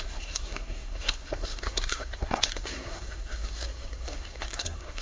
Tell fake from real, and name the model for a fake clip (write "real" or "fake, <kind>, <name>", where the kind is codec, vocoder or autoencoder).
fake, codec, SNAC